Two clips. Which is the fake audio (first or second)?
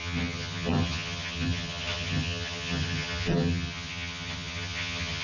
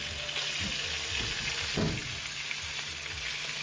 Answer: first